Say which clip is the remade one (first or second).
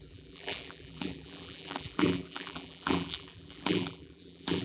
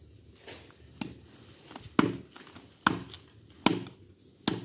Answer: first